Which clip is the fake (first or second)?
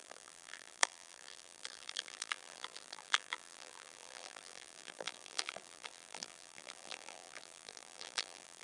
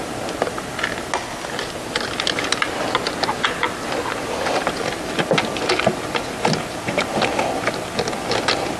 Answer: first